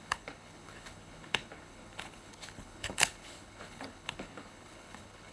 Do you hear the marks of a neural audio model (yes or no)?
yes